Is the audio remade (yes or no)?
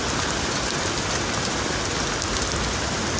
no